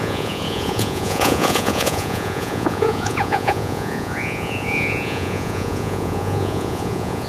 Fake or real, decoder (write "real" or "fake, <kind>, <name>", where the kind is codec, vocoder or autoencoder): fake, vocoder, Vocos